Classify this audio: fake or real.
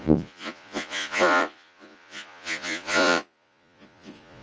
fake